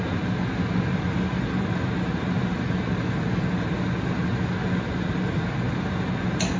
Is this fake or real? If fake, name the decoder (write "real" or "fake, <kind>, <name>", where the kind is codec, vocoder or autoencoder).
real